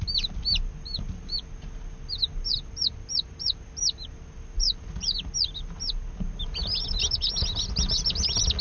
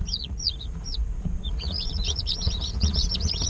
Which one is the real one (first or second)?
first